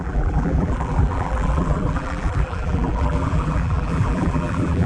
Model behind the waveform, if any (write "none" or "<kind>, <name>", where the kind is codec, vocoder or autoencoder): vocoder, BigVGAN v2